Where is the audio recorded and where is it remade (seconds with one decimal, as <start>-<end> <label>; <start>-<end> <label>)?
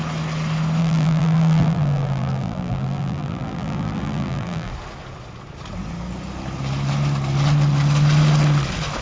0.0-0.8 recorded; 0.8-4.7 remade; 4.7-9.0 recorded